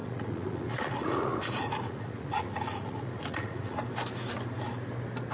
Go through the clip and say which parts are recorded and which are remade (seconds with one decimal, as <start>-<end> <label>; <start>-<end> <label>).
0.0-3.8 remade; 3.8-5.3 recorded